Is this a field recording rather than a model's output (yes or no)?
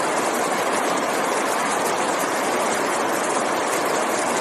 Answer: yes